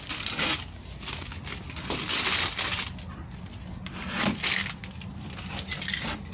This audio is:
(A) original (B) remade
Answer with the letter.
A